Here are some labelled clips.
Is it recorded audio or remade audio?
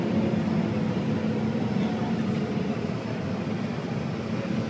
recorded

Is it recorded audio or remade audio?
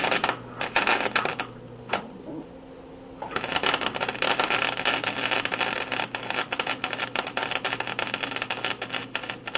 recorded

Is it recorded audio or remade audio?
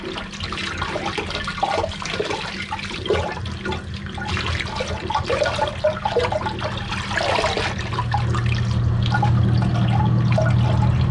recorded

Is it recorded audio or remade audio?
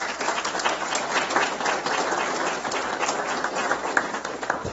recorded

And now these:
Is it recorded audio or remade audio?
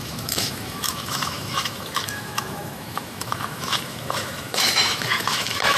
remade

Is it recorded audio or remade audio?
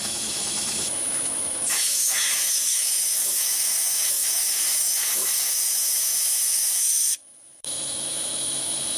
remade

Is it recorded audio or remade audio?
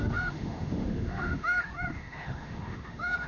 remade